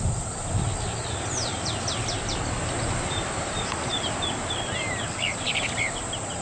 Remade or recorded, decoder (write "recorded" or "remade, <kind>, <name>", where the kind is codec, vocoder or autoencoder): remade, vocoder, BigVGAN v2